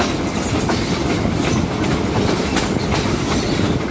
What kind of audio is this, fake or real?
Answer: real